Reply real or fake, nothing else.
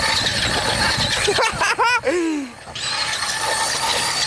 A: real